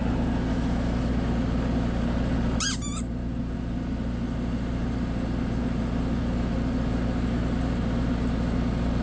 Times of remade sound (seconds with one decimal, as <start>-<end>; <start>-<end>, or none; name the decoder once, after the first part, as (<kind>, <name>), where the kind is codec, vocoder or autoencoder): 0.5-1.1 (autoencoder, DAC-VAE)